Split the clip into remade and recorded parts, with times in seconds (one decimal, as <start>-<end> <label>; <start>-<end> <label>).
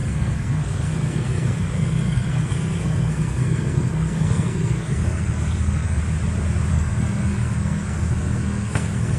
0.0-6.0 remade; 6.0-6.7 recorded; 6.7-9.2 remade